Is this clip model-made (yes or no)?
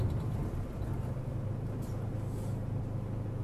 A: no